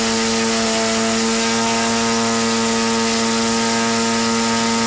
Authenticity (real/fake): real